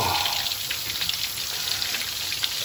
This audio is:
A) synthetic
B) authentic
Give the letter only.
B